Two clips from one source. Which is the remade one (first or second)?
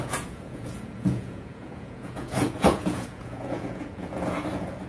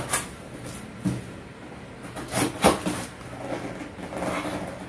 first